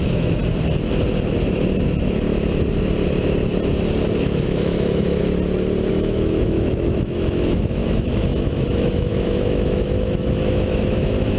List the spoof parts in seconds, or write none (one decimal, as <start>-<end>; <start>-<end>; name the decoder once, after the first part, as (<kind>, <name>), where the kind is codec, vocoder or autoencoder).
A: 0.0-0.4 (autoencoder, DAC-VAE); 4.1-5.2; 5.9-11.4